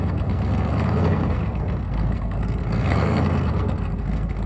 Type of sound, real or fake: fake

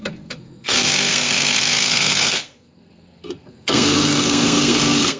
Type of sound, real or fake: fake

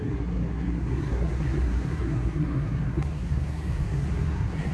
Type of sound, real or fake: fake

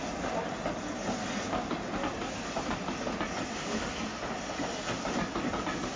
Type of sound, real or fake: real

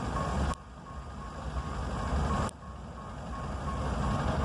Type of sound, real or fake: real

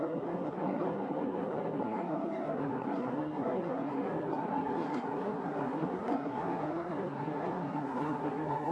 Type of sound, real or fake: fake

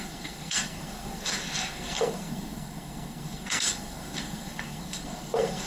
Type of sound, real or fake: fake